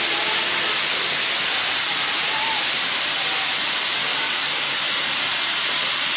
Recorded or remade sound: recorded